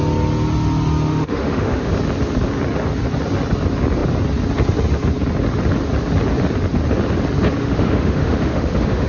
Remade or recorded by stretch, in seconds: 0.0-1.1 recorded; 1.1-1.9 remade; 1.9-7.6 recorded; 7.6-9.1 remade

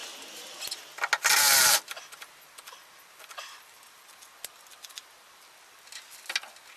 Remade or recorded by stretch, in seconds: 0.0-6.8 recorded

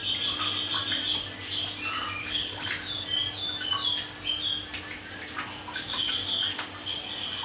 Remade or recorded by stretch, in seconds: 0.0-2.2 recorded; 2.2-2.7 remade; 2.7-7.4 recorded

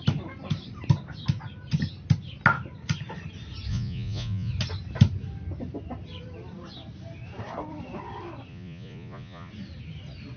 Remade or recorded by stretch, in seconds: 0.0-3.7 recorded; 3.7-4.5 remade; 4.5-8.5 recorded; 8.5-9.5 remade; 9.5-10.4 recorded

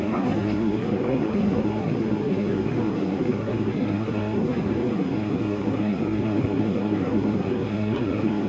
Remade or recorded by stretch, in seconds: 0.0-8.5 remade